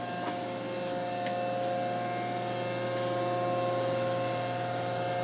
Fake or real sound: real